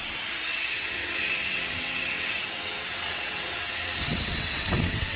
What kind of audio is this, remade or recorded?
remade